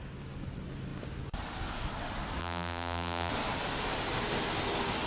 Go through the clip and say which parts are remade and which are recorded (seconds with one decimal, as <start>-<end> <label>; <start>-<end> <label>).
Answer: 0.0-2.4 recorded; 2.4-3.3 remade; 3.3-5.1 recorded